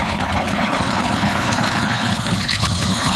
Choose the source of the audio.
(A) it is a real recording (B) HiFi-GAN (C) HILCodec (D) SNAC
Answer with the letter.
C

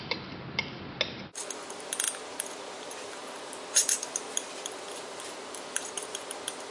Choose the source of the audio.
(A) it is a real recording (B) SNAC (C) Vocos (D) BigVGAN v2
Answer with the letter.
A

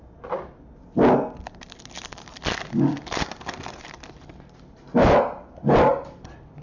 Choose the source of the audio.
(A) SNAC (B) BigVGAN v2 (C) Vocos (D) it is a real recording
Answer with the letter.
D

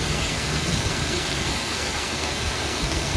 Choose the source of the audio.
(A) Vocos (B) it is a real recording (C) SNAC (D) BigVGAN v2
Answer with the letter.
C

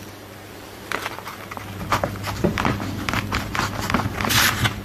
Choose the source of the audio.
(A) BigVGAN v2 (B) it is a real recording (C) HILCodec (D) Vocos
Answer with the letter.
A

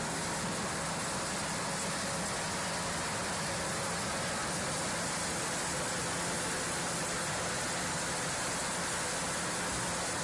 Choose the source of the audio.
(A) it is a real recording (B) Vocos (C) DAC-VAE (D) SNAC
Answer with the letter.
A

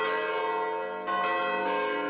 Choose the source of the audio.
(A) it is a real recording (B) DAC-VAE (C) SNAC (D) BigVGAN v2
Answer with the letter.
A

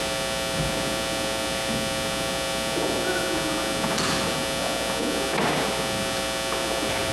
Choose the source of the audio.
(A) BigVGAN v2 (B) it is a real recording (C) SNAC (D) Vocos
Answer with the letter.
B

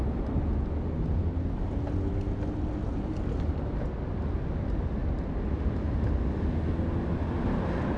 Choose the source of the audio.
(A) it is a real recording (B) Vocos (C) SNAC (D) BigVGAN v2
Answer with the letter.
A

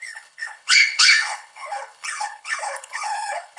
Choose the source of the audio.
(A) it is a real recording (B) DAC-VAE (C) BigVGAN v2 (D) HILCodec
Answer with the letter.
D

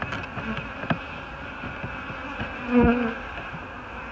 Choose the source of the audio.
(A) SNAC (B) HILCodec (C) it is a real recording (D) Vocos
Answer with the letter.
C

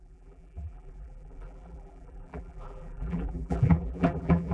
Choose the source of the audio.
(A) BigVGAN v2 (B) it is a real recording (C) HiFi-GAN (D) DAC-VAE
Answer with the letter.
A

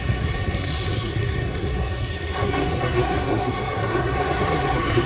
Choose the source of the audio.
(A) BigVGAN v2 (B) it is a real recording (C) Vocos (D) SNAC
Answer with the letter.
D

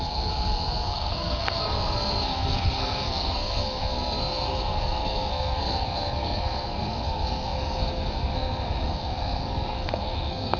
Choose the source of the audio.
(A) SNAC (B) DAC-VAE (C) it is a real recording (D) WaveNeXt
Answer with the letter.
A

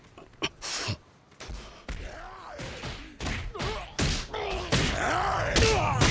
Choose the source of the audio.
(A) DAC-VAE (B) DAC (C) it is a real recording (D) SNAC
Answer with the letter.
C